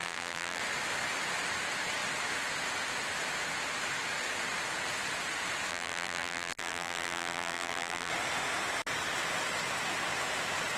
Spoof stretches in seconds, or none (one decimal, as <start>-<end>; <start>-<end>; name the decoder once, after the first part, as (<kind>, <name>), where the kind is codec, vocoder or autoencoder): 0.0-0.6 (vocoder, BigVGAN v2); 5.7-8.1